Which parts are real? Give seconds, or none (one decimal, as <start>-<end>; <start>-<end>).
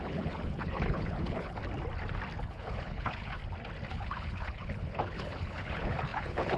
1.6-2.4; 3.4-3.9